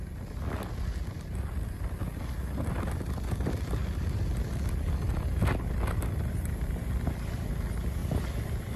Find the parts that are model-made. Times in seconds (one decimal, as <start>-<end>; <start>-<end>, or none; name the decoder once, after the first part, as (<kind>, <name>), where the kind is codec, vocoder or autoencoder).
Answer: 8.0-8.8 (vocoder, BigVGAN v2)